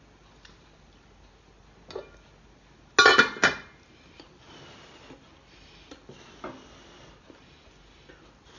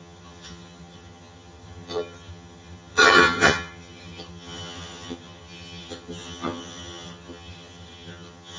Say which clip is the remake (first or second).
second